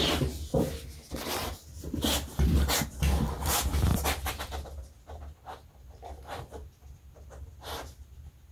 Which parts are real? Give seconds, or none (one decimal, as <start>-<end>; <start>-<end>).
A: 0.0-8.5